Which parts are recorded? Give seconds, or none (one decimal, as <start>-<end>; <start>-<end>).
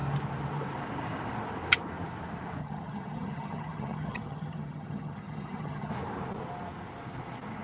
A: 0.0-2.6; 5.9-7.6